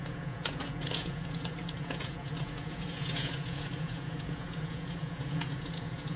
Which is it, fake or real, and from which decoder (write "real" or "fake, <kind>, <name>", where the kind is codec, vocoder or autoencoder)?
fake, vocoder, Vocos